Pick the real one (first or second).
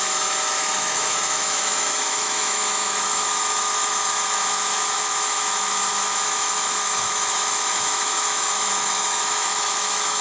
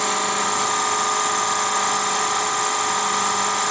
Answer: second